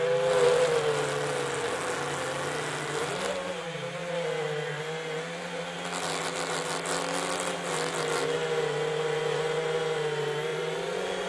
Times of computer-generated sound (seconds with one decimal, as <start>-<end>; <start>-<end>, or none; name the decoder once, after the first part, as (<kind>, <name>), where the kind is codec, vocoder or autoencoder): 10.5-11.3 (vocoder, Vocos)